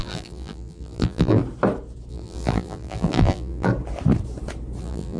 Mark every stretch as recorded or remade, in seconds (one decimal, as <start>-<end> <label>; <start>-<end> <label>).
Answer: 0.0-1.4 remade; 1.4-2.1 recorded; 2.1-3.7 remade; 3.7-4.8 recorded; 4.8-5.2 remade